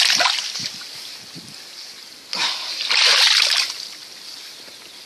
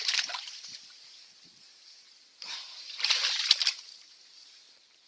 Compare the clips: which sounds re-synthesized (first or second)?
second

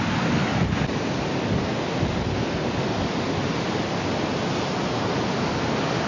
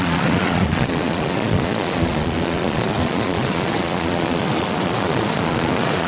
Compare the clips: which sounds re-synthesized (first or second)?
second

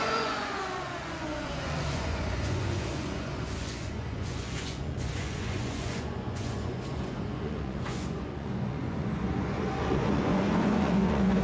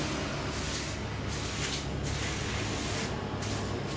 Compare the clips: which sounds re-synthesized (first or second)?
first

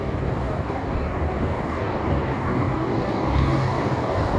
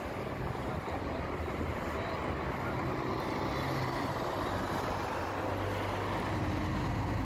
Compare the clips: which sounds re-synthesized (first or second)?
first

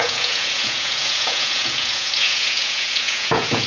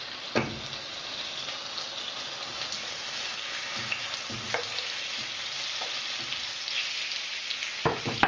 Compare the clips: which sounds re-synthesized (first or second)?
first